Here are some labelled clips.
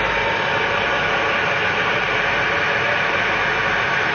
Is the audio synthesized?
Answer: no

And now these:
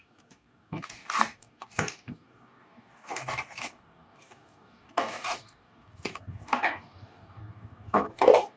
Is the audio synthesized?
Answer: yes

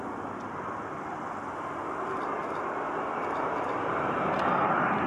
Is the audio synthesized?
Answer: no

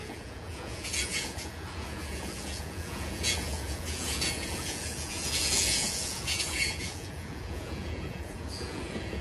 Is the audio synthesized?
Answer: yes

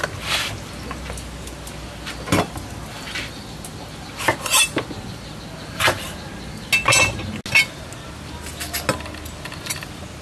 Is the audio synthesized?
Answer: no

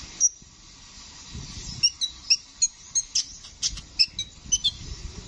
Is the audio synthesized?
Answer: no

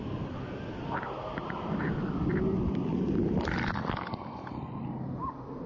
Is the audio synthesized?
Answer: no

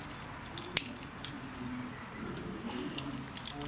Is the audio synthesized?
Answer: no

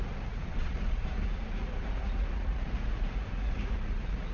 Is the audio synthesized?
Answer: yes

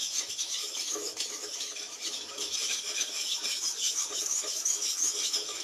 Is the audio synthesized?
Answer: yes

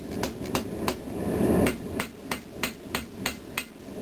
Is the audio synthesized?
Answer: no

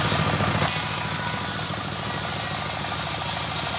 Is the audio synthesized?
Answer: no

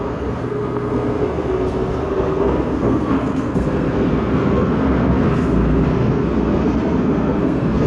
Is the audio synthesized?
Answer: yes